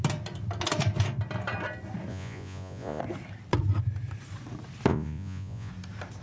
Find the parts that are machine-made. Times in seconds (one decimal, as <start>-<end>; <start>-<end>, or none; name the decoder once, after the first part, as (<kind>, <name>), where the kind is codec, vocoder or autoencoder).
2.1-3.0 (vocoder, Vocos); 4.9-5.7